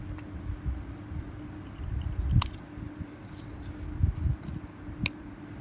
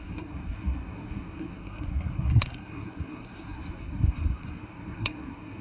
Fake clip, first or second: second